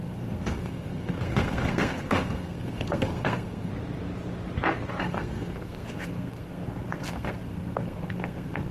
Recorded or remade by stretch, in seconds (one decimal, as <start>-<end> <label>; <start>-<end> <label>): 0.0-3.7 remade; 3.7-5.0 recorded; 5.0-8.7 remade